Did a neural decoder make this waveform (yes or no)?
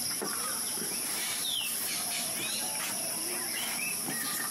yes